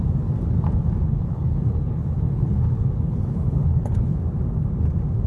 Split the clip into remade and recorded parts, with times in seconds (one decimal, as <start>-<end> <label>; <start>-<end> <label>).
0.0-1.0 recorded; 1.0-4.2 remade; 4.2-5.3 recorded